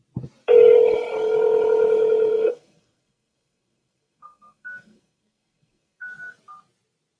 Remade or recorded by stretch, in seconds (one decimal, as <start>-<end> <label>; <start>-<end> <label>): 0.0-2.3 recorded; 2.3-6.0 remade; 6.0-7.2 recorded